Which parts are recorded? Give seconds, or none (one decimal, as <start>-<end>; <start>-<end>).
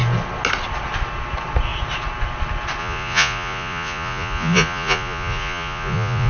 0.0-2.8